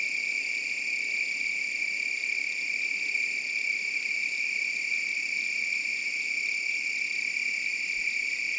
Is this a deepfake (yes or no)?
no